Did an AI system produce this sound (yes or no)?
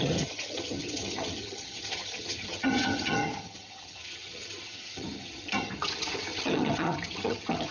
yes